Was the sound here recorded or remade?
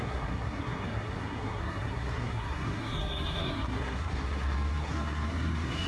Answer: remade